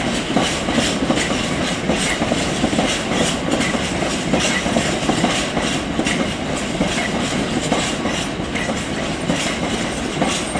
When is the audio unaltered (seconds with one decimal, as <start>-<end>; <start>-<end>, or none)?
0.0-10.6

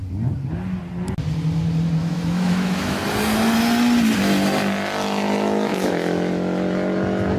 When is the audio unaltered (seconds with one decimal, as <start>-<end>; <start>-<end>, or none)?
0.0-2.0; 3.0-5.7; 6.3-7.4